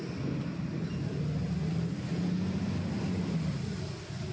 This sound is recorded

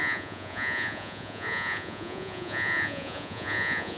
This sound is remade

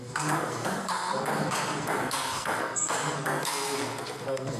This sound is remade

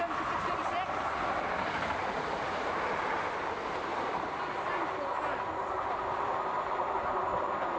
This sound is recorded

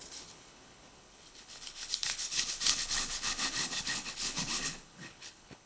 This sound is remade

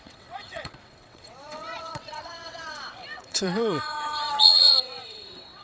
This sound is remade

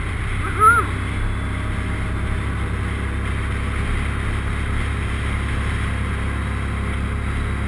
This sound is recorded